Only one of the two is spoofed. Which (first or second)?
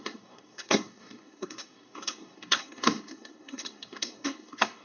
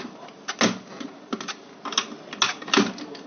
first